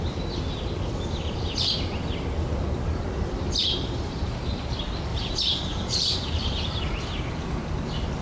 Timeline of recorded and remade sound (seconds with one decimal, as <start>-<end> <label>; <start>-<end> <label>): 0.0-3.6 recorded; 3.6-4.6 remade; 4.6-5.1 recorded; 5.1-6.8 remade; 6.8-8.2 recorded